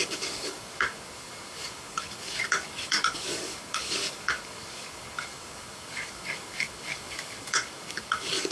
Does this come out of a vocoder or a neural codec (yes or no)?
yes